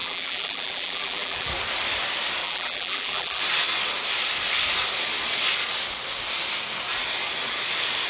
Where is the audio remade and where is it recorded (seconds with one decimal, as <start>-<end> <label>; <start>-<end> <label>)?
0.0-1.5 remade; 1.5-2.4 recorded; 2.4-3.4 remade; 3.4-8.1 recorded